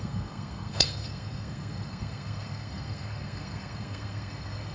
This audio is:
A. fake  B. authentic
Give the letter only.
A